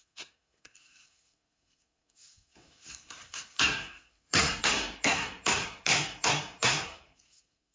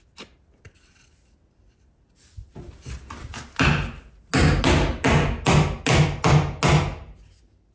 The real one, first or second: second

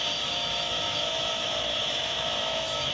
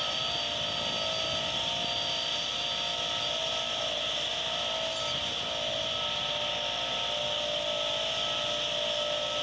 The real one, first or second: second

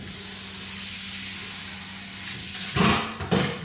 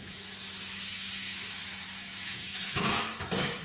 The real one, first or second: first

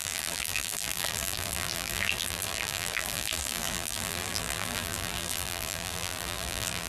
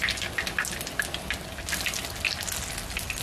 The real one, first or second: second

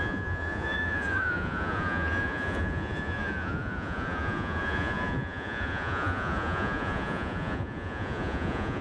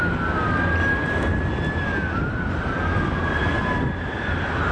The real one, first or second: second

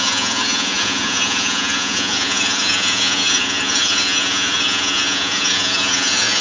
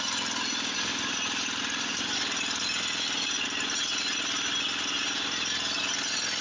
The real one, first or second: second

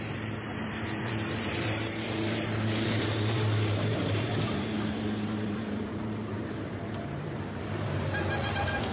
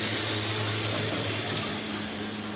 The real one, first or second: second